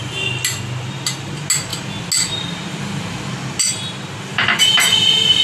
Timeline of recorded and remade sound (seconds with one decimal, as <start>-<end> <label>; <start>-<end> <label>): 0.0-4.3 recorded; 4.3-5.4 remade